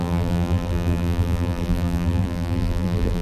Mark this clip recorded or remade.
remade